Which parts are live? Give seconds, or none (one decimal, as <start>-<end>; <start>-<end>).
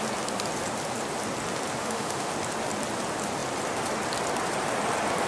0.0-1.8; 2.3-5.3